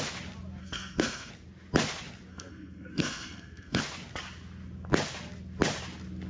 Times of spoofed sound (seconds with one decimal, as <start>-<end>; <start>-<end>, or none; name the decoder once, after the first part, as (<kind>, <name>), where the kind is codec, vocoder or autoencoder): 0.6-1.3 (codec, SNAC); 2.3-3.8